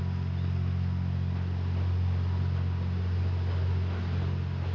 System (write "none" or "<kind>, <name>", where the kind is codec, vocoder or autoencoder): none